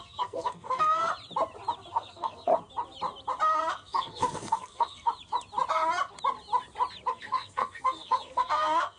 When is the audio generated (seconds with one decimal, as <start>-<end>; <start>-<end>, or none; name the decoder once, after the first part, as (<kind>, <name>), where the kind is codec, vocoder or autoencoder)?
0.0-1.0 (codec, SNAC); 1.9-2.5; 3.7-5.1; 7.1-9.0

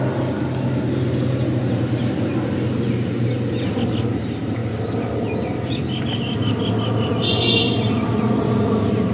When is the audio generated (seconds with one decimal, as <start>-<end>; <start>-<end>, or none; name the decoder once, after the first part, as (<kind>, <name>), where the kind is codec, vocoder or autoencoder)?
none

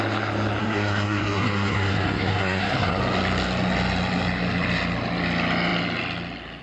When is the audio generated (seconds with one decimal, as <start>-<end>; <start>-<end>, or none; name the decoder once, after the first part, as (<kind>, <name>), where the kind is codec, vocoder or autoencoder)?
0.6-3.0 (codec, SNAC)

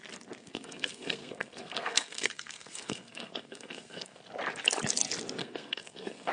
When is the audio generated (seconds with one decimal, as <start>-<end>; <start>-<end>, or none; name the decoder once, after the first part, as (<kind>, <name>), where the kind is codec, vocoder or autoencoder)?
0.4-4.2 (codec, SNAC); 5.4-6.3

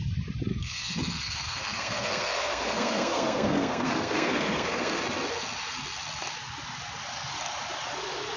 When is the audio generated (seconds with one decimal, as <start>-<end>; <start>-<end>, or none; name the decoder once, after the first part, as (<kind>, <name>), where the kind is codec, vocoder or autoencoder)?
0.5-5.0 (codec, SNAC)

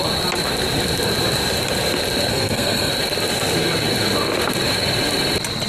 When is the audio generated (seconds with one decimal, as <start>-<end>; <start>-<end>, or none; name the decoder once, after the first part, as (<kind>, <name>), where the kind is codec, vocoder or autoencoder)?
2.3-2.9 (codec, SNAC)

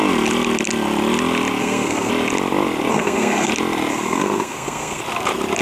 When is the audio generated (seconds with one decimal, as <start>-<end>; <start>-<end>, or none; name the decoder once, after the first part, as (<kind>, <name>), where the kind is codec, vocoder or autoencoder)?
1.6-2.1 (codec, SNAC); 2.9-3.5; 3.9-5.0